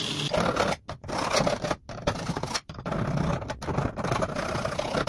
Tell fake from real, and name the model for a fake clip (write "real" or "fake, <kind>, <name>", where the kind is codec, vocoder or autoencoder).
real